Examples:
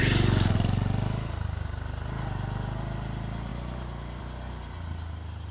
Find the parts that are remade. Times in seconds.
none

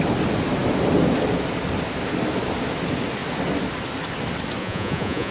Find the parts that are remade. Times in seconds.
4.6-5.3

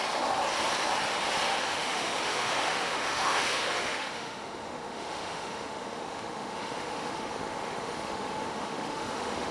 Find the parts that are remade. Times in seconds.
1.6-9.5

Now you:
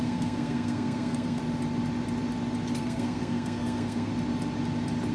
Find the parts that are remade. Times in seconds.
0.0-1.4; 2.8-4.1

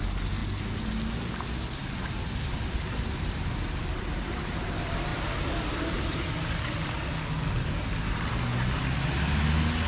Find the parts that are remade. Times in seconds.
none